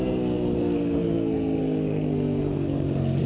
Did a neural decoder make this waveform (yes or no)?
yes